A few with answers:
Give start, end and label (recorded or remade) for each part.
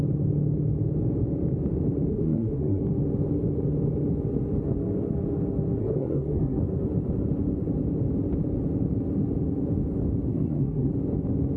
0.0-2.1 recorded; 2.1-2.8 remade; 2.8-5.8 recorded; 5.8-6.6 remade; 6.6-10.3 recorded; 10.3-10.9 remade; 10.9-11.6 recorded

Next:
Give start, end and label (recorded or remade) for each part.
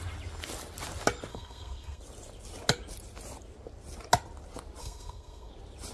0.0-1.3 recorded; 1.3-2.0 remade; 2.0-4.8 recorded; 4.8-5.5 remade; 5.5-5.9 recorded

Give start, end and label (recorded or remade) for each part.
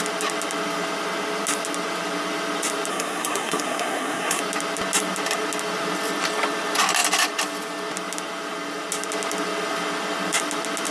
0.0-2.9 recorded; 2.9-4.4 remade; 4.4-10.9 recorded